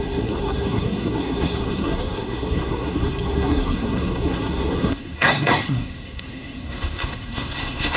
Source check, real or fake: fake